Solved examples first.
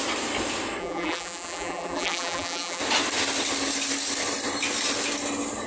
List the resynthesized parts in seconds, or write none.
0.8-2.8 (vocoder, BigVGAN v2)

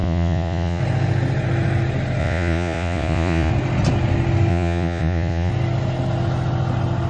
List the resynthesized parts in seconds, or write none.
0.0-0.8 (vocoder, Vocos); 2.2-3.5; 4.5-5.5